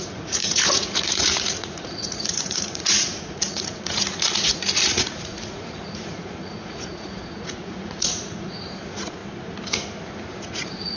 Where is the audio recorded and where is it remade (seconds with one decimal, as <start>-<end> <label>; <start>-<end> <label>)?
0.0-9.2 remade; 9.2-10.4 recorded; 10.4-11.0 remade